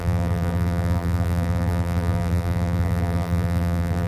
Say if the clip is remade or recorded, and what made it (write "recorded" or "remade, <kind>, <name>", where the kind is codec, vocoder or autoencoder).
remade, vocoder, BigVGAN v2